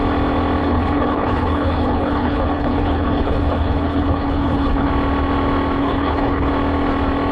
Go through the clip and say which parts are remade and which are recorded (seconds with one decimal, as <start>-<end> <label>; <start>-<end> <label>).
0.0-0.6 recorded; 0.6-4.9 remade; 4.9-5.8 recorded; 5.8-6.5 remade; 6.5-7.3 recorded